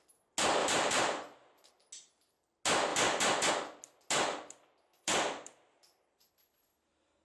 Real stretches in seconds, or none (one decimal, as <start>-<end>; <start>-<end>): 0.0-0.6; 1.7-4.9; 6.3-7.2